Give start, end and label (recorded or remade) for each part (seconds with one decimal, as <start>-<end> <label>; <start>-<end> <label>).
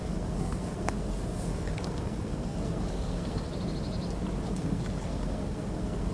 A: 0.0-3.5 remade; 3.5-4.5 recorded; 4.5-6.1 remade